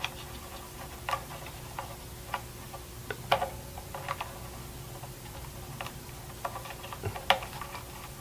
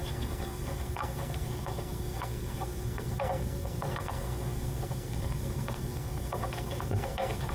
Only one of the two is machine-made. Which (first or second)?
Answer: second